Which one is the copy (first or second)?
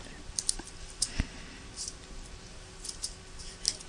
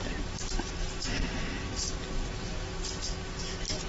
first